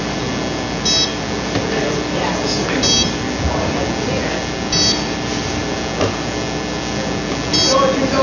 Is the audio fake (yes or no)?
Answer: no